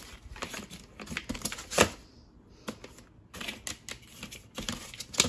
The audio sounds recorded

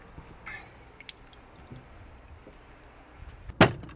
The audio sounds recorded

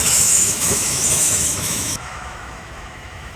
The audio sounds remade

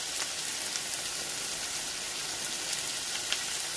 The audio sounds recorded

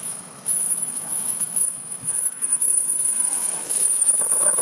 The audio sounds remade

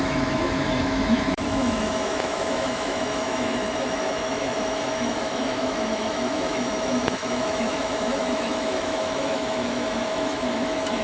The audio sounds remade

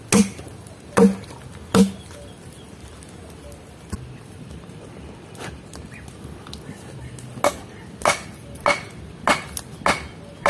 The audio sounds recorded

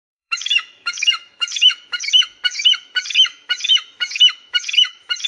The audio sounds remade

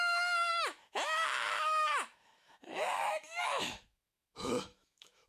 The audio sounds remade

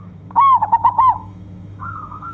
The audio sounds remade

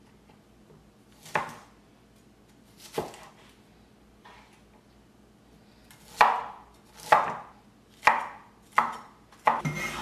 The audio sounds recorded